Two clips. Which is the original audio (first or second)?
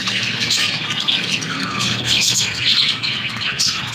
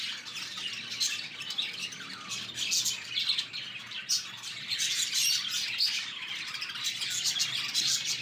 second